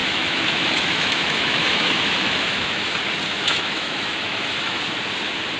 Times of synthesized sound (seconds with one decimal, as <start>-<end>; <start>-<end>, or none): 0.0-2.9; 3.3-4.8